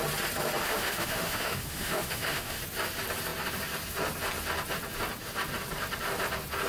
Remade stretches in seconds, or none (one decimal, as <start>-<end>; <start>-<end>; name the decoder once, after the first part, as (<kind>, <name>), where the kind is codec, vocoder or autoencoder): 0.6-2.6 (autoencoder, DAC-VAE)